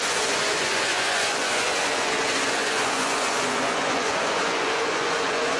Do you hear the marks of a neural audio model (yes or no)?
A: yes